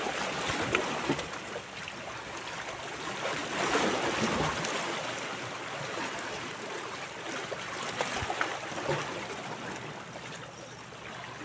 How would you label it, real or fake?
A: real